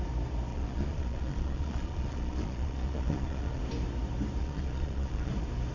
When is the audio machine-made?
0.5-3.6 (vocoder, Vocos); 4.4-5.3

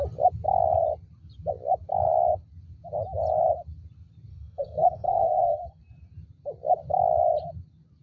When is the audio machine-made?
4.3-5.8 (codec, SNAC)

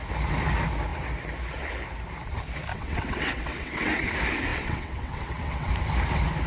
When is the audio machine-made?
2.7-4.1 (vocoder, WaveNeXt); 4.5-5.7

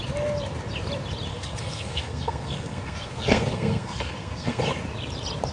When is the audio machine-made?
1.3-4.6 (codec, SNAC)

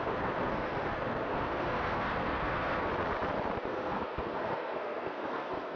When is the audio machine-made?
0.0-2.9 (codec, SNAC); 3.7-5.8

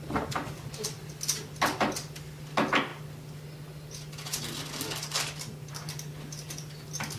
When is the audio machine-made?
none

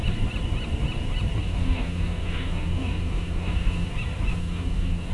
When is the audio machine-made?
1.4-3.9 (codec, DAC); 4.3-5.1